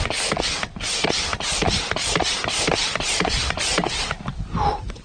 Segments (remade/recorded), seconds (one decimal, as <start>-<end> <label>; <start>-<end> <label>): 0.0-2.8 recorded; 2.8-3.6 remade; 3.6-5.0 recorded